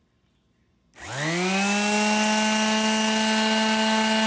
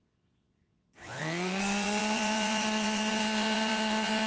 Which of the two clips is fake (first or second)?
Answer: second